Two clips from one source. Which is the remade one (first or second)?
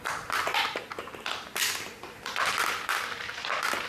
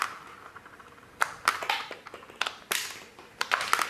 first